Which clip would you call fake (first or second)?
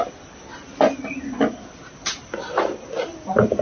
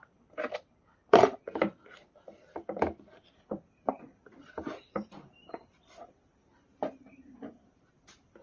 second